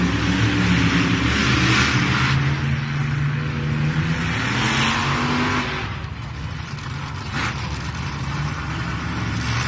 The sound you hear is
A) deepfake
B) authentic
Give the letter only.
B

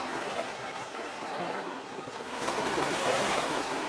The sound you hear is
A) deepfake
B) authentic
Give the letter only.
A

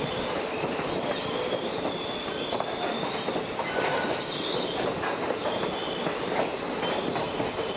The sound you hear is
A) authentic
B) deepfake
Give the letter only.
A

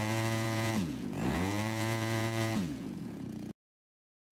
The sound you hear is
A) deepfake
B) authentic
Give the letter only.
A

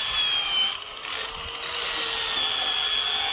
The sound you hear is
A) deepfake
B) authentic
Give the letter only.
B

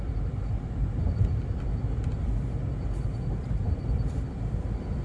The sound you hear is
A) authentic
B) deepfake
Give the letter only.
B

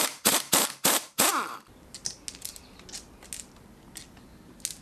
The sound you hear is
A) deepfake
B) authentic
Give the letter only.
B